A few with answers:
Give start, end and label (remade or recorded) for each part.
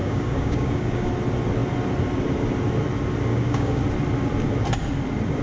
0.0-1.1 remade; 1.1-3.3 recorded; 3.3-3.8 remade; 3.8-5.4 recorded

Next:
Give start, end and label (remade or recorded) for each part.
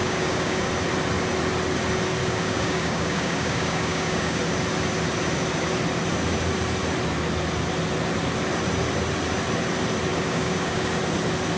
0.0-0.7 remade; 0.7-2.2 recorded; 2.2-4.4 remade; 4.4-10.1 recorded; 10.1-10.9 remade; 10.9-11.6 recorded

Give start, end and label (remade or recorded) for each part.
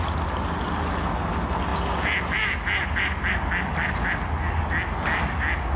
0.0-5.8 recorded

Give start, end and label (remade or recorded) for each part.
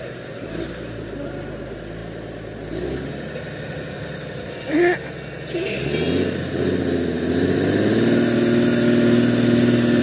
0.0-10.0 recorded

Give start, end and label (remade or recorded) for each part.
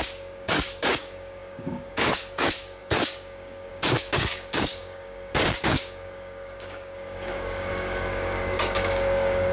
0.0-9.5 remade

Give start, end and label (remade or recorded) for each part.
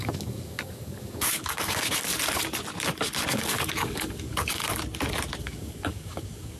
0.0-2.1 remade; 2.1-3.3 recorded; 3.3-4.6 remade; 4.6-5.4 recorded; 5.4-6.6 remade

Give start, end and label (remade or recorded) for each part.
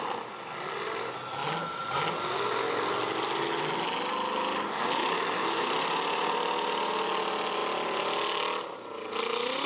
0.0-9.7 recorded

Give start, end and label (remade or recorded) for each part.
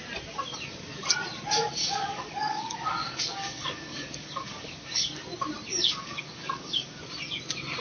0.0-1.8 recorded; 1.8-5.2 remade; 5.2-5.7 recorded; 5.7-7.0 remade; 7.0-7.8 recorded